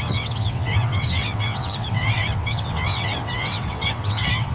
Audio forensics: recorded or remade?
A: remade